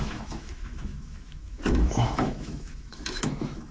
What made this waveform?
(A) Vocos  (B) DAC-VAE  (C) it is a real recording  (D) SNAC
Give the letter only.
B